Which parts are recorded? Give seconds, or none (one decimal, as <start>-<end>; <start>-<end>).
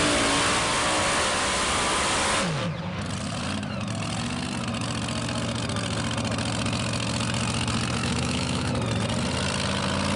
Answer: 0.0-8.0; 8.7-10.2